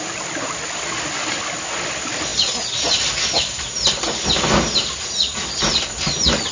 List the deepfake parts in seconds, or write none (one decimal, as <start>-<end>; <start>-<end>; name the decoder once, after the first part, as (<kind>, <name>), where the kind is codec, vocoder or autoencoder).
none